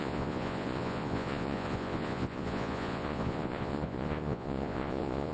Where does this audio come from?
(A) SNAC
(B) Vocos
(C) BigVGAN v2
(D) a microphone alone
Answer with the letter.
B